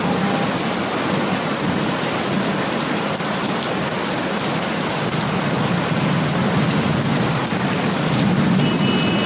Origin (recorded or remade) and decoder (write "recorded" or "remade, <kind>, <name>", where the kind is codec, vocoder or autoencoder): recorded